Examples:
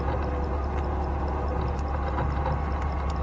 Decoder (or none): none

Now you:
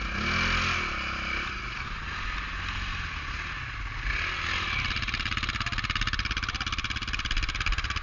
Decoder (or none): none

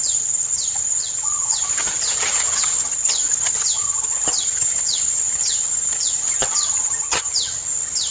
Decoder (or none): vocoder, HiFi-GAN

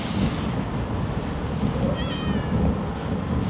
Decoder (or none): none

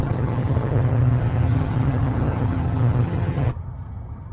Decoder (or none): vocoder, HiFi-GAN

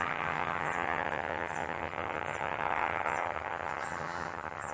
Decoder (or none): vocoder, HiFi-GAN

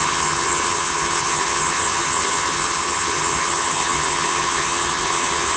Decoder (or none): vocoder, HiFi-GAN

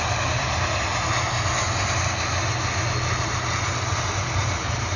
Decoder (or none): none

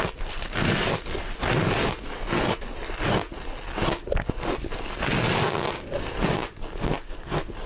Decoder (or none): none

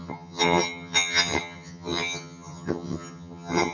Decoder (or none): vocoder, HiFi-GAN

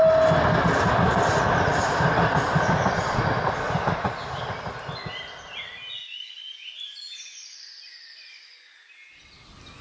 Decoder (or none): none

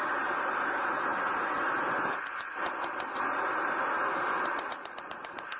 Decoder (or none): none